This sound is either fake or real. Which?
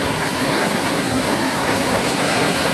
fake